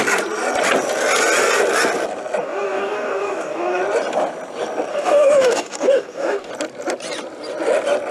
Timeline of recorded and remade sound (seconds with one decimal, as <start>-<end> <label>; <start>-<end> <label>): 0.0-2.4 recorded; 2.4-3.8 remade; 3.8-4.9 recorded; 4.9-6.5 remade; 6.5-8.1 recorded